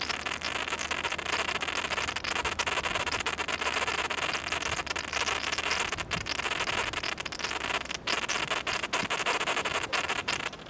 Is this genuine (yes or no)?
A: yes